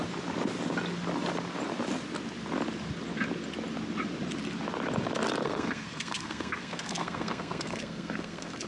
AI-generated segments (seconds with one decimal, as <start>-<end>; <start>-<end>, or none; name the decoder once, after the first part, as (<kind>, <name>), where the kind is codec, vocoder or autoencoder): 5.4-8.7 (codec, SNAC)